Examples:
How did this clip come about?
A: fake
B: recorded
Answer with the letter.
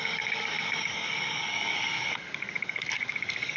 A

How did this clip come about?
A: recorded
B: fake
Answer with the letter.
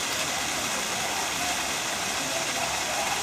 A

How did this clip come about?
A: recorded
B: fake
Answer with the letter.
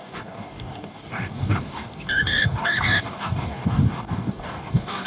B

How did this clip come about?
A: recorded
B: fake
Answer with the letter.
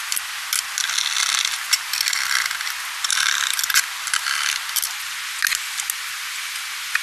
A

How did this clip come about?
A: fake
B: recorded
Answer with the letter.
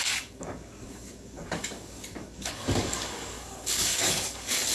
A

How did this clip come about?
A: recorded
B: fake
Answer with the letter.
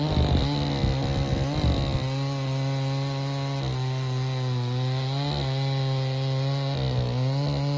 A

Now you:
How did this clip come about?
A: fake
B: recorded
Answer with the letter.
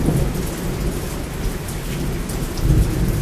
B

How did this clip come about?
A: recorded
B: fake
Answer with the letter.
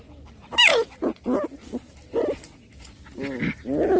A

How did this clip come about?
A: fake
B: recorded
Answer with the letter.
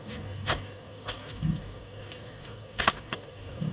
A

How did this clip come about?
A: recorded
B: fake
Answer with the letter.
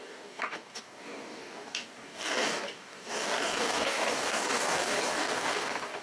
B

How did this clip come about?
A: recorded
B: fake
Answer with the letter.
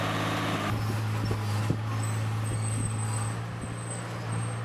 A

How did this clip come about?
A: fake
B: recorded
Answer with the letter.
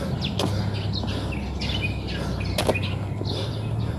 B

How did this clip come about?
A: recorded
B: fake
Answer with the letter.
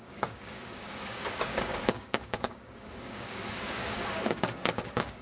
B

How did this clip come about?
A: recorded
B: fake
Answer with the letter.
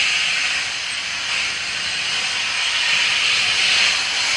A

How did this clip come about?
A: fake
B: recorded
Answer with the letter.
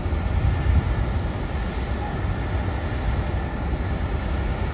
B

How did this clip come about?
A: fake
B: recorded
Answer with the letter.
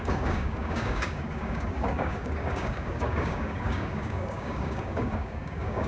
A